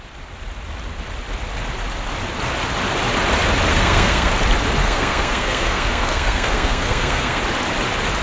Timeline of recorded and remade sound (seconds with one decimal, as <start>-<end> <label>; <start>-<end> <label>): 0.0-3.7 recorded; 3.7-4.3 remade; 4.3-4.8 recorded; 4.8-7.4 remade; 7.4-8.2 recorded